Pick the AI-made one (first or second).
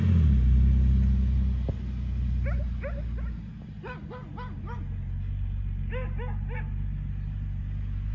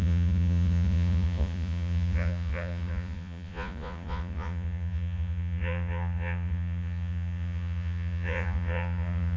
second